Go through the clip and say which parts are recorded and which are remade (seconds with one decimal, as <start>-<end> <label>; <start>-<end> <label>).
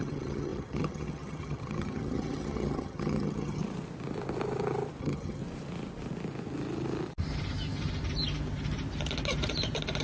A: 0.0-3.6 remade; 3.6-5.0 recorded; 5.0-5.4 remade; 5.4-10.0 recorded